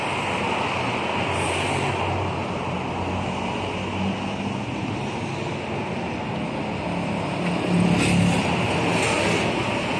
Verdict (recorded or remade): recorded